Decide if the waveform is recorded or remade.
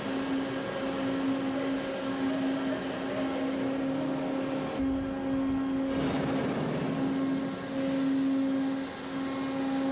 recorded